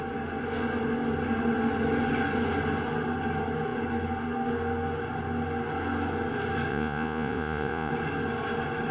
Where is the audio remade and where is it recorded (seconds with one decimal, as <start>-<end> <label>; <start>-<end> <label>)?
0.0-6.7 recorded; 6.7-7.9 remade; 7.9-8.9 recorded